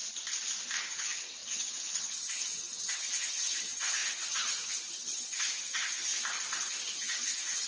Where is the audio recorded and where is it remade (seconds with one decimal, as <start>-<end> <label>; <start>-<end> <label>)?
0.0-0.8 recorded; 0.8-6.1 remade; 6.1-6.8 recorded; 6.8-7.7 remade